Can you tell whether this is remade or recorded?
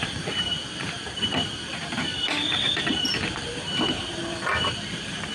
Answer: remade